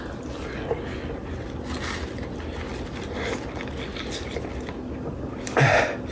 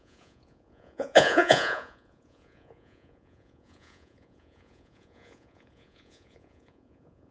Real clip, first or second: first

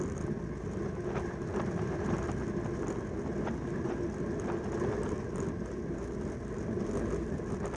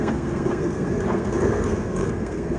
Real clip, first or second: first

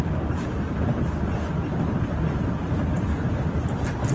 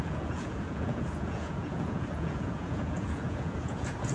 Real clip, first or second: first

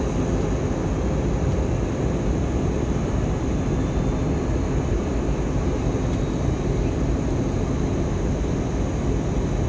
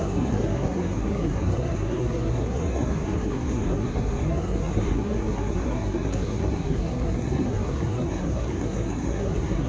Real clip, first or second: first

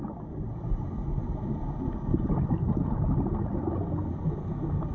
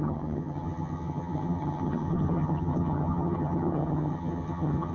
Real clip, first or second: first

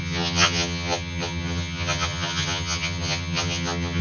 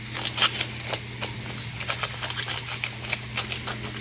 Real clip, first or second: second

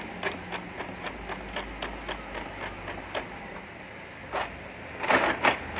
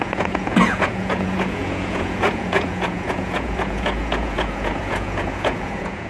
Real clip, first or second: first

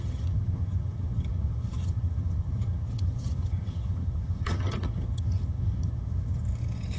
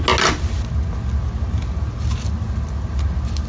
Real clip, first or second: second